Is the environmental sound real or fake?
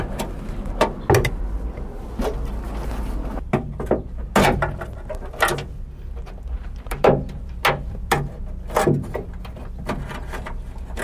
real